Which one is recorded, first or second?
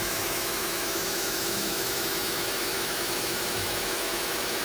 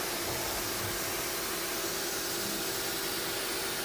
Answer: second